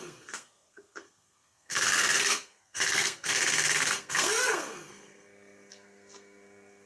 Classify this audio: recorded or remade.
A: remade